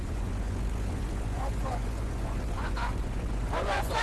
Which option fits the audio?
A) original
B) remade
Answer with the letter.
B